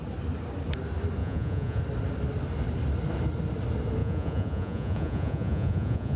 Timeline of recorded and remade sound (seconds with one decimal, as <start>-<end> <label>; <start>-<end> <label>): 0.0-1.2 recorded; 1.2-1.8 remade; 1.8-4.0 recorded; 4.0-6.2 remade